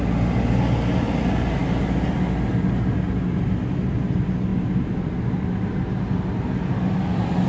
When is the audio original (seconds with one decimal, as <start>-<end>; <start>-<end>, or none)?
0.0-7.5